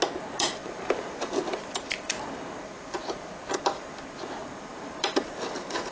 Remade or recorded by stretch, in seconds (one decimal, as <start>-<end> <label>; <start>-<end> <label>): 0.0-0.6 recorded; 0.6-3.3 remade; 3.3-4.4 recorded; 4.4-5.9 remade